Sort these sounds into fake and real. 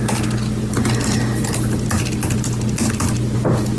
real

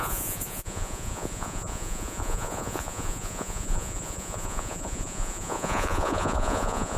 fake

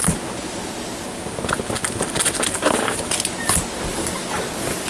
real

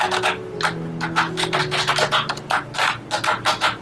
real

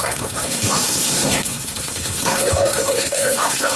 fake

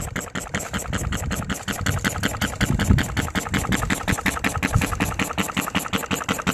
real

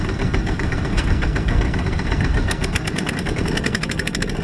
fake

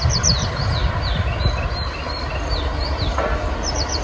real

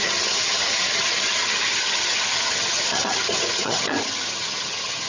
fake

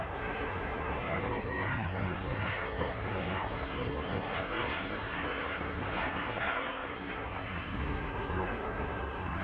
fake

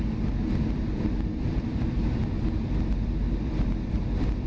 real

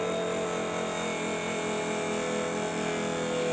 real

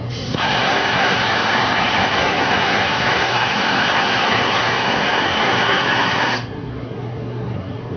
fake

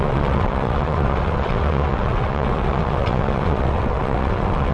fake